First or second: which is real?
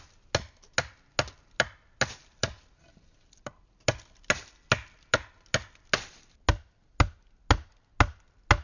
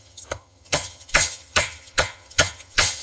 first